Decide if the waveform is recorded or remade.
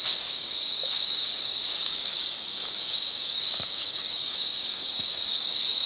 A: remade